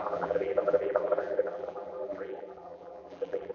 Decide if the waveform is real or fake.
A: fake